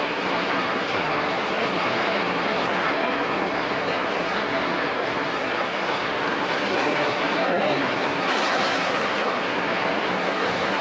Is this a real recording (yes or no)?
no